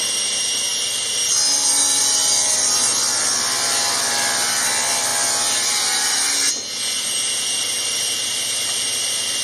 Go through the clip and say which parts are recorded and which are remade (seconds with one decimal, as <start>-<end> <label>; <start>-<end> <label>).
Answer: 0.0-9.4 recorded